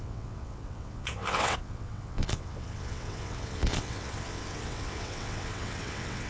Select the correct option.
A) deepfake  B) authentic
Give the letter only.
A